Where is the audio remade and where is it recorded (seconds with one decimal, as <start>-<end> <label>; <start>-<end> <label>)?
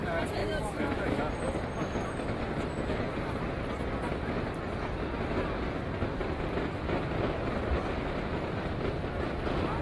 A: 0.0-0.4 recorded; 0.4-1.2 remade; 1.2-9.8 recorded